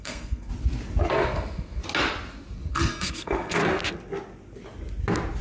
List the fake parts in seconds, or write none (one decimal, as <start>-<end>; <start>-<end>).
0.0-0.5; 1.1-1.8; 2.7-3.6